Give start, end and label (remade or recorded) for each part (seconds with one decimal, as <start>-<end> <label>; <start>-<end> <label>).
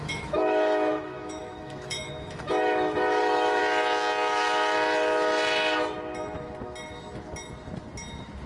0.0-3.6 remade; 3.6-8.5 recorded